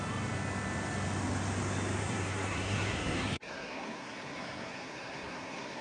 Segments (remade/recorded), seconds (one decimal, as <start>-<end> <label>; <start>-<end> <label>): 0.0-2.0 recorded; 2.0-5.8 remade